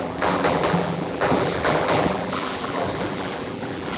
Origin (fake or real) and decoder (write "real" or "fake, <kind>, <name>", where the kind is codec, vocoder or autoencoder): fake, vocoder, BigVGAN v2